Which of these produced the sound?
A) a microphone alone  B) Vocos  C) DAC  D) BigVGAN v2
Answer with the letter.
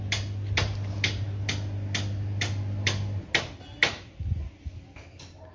A